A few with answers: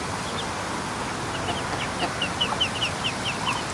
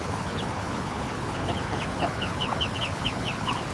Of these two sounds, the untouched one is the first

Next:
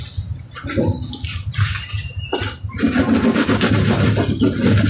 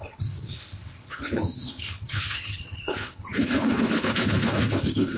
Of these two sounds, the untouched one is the first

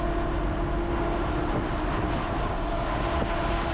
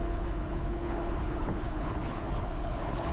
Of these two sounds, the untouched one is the first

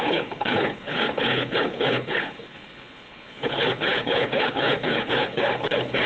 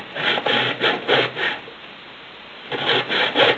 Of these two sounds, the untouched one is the second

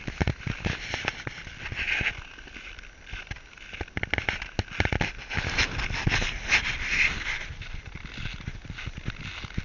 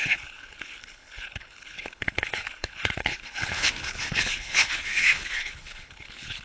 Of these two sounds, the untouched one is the first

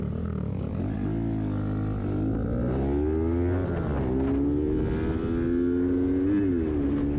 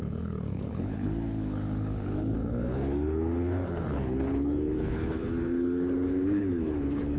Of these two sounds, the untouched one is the first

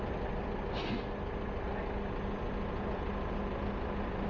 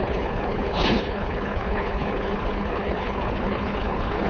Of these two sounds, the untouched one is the first